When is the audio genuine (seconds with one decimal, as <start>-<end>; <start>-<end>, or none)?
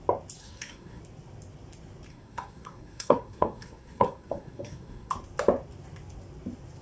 0.0-0.4; 1.0-2.1; 5.1-6.8